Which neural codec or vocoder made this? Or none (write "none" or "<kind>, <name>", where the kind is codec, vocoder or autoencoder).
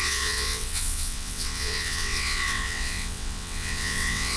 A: vocoder, WaveNeXt